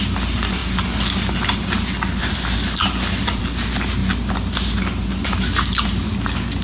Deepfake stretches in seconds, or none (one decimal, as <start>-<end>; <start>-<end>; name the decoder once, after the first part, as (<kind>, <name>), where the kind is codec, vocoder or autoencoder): none